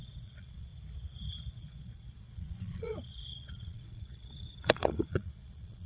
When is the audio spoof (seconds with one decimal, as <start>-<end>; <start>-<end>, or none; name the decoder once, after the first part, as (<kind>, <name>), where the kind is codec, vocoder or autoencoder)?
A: 0.0-0.7 (vocoder, Vocos); 1.5-5.9